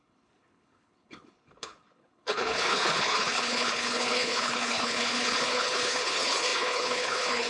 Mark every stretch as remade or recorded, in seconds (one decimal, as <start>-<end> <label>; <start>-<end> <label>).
0.0-7.5 remade